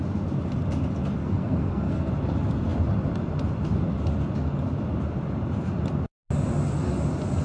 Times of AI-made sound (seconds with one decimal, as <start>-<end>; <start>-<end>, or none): 1.2-2.1